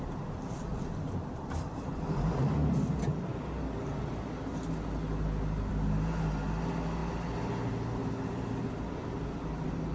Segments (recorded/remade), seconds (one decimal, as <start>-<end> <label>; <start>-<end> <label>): 0.0-9.9 recorded